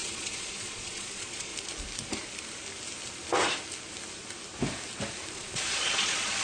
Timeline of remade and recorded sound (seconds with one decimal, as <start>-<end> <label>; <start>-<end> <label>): 0.0-1.5 remade; 1.5-5.3 recorded; 5.3-6.4 remade